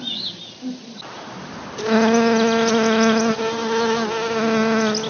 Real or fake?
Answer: real